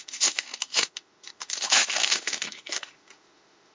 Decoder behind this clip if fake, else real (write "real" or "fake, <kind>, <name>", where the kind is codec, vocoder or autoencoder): fake, autoencoder, DAC-VAE